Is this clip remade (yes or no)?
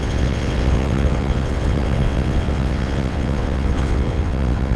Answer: yes